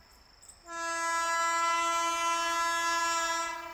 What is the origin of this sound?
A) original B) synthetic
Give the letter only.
A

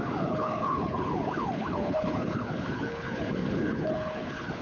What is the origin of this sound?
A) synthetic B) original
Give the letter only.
A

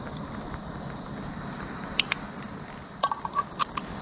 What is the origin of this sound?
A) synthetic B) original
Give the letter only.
B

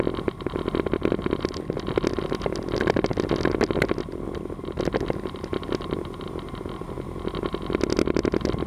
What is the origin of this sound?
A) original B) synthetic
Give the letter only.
A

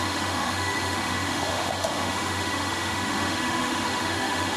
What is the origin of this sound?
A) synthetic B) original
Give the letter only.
A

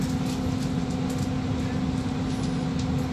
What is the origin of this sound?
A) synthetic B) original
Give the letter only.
B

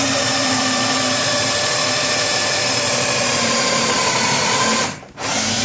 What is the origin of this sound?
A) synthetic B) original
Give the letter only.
A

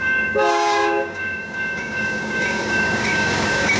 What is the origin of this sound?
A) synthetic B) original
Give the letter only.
A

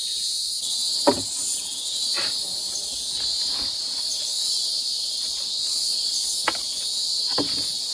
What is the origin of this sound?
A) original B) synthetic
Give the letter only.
A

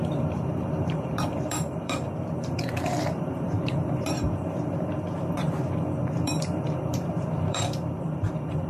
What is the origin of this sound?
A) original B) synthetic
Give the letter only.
B